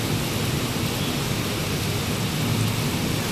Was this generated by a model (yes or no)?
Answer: no